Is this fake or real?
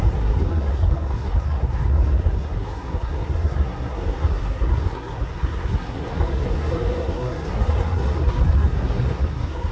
fake